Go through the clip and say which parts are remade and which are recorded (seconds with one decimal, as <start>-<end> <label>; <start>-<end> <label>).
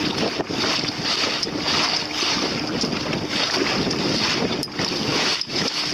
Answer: 0.0-5.1 recorded; 5.1-5.9 remade